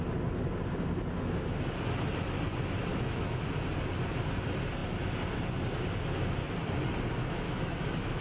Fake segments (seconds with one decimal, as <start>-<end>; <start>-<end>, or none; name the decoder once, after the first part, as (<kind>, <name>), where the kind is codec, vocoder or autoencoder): 2.9-3.4 (autoencoder, DAC-VAE); 7.2-8.2